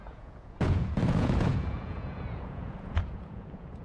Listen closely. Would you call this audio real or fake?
fake